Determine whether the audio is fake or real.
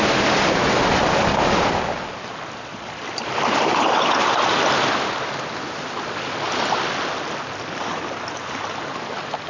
real